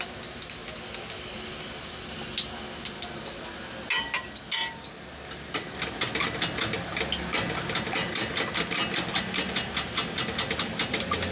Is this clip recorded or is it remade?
recorded